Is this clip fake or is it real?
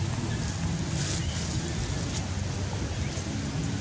real